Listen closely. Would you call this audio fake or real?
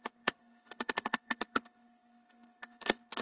fake